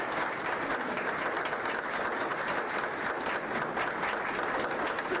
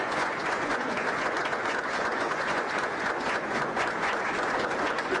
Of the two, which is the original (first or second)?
first